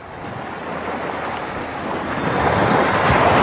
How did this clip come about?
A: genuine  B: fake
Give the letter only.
A